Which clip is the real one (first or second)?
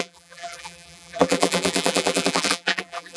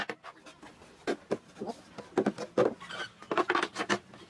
second